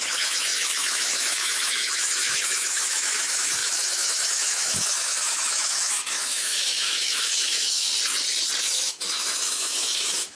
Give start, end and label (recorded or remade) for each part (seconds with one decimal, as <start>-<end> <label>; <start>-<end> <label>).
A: 0.0-7.9 remade; 7.9-8.6 recorded; 8.6-10.4 remade